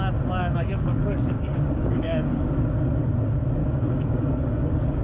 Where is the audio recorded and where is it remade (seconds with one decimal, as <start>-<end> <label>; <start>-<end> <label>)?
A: 0.0-0.4 recorded; 0.4-2.4 remade; 2.4-3.6 recorded; 3.6-5.0 remade